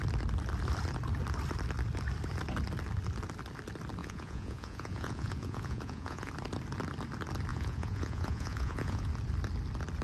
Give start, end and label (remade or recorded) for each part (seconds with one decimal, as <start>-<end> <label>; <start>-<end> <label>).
0.0-4.0 recorded; 4.0-6.3 remade; 6.3-7.5 recorded; 7.5-9.1 remade; 9.1-10.0 recorded